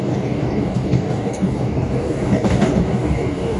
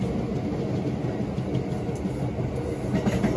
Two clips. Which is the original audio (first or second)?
second